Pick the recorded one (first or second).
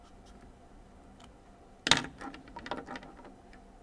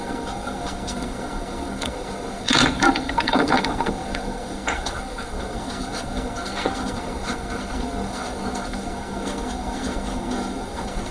first